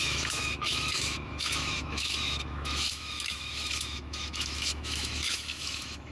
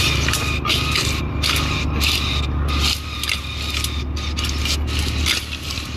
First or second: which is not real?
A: first